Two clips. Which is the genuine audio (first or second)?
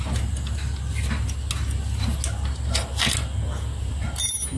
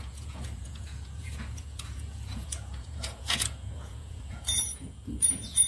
first